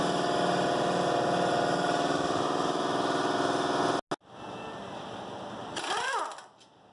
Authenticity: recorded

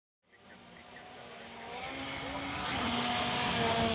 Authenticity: recorded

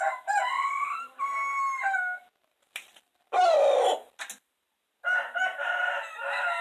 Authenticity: recorded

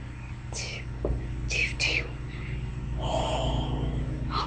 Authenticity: remade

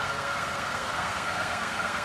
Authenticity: remade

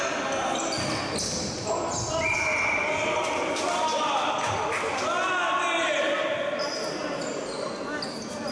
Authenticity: recorded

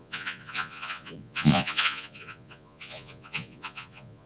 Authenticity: remade